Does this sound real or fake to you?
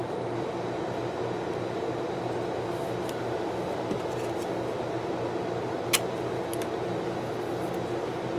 real